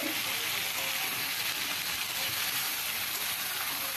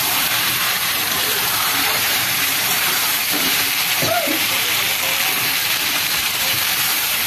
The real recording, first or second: first